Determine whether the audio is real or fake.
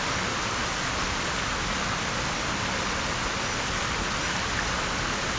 real